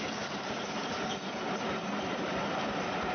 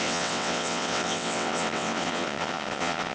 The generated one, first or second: second